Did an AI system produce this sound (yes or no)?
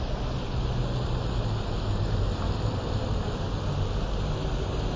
no